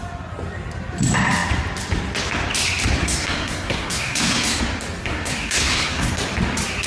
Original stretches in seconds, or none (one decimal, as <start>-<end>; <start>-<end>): 0.0-3.0; 4.6-5.0; 6.1-6.9